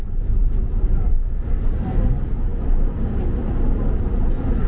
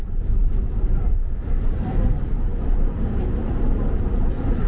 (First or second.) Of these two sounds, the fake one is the second